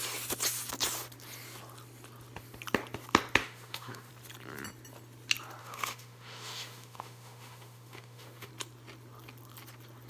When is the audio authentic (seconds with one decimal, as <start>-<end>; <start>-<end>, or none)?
0.0-3.4; 4.1-5.6; 8.5-10.1